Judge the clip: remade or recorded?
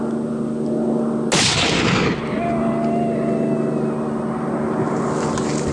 recorded